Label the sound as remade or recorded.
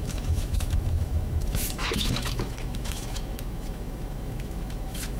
remade